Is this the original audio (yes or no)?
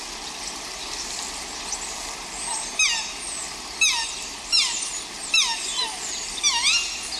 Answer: yes